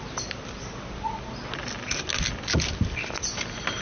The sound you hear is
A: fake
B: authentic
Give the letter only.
B